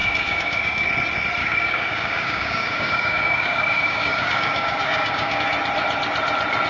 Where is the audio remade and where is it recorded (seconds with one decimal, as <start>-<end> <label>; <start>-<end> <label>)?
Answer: 0.0-0.9 remade; 0.9-1.4 recorded; 1.4-5.4 remade; 5.4-6.7 recorded